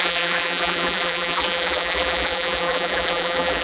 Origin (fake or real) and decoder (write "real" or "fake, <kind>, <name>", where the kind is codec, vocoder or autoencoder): fake, vocoder, BigVGAN v2